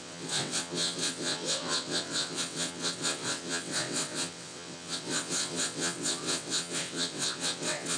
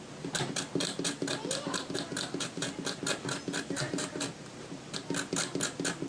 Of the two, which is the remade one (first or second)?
first